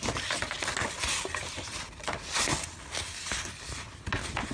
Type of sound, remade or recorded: recorded